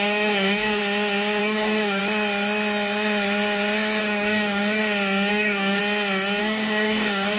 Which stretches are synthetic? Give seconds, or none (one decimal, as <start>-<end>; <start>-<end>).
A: 0.0-0.8; 1.4-2.0; 4.0-4.8; 5.3-5.8; 6.4-7.4